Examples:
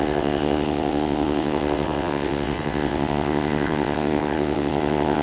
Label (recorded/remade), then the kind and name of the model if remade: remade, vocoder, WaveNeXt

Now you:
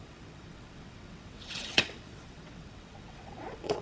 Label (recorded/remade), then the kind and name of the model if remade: remade, vocoder, WaveNeXt